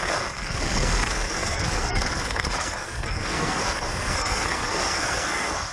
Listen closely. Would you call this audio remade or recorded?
remade